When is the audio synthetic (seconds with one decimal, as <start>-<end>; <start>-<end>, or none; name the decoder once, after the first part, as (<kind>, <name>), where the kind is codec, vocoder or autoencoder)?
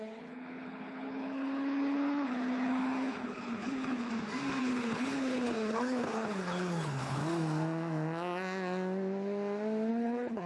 0.0-4.1 (codec, HILCodec); 4.6-7.2; 9.9-10.5